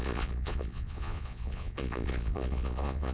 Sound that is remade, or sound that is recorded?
remade